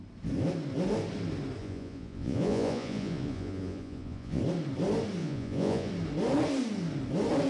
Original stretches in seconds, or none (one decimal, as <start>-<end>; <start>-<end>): 0.0-1.6; 4.4-5.2; 5.9-7.5